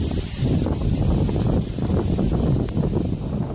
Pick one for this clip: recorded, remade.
recorded